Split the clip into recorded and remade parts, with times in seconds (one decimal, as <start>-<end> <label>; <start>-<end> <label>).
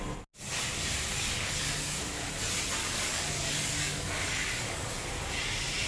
0.0-1.1 recorded; 1.1-2.0 remade; 2.0-2.8 recorded; 2.8-5.0 remade; 5.0-5.9 recorded